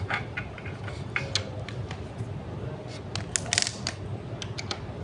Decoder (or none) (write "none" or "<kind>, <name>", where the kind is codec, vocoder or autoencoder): none